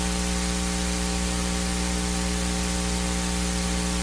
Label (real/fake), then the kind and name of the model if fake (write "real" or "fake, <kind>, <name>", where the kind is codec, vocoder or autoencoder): fake, vocoder, BigVGAN v2